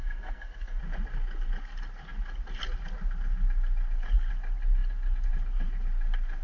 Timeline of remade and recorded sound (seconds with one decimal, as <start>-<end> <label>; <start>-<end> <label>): 0.0-0.8 remade; 0.8-6.4 recorded